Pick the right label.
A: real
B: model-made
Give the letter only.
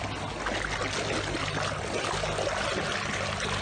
A